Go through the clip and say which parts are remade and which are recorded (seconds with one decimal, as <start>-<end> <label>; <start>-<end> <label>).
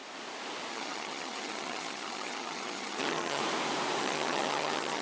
0.0-0.7 recorded; 0.7-3.4 remade; 3.4-4.0 recorded; 4.0-5.0 remade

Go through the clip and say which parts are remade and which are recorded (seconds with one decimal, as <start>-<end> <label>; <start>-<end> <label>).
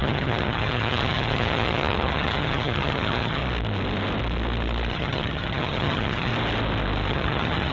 0.0-3.4 remade; 3.4-4.9 recorded; 4.9-6.3 remade; 6.3-7.1 recorded; 7.1-7.7 remade